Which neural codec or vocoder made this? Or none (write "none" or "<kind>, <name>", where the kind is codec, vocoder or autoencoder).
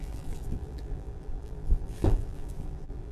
vocoder, BigVGAN v2